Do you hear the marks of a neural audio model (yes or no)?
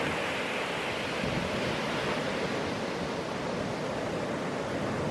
no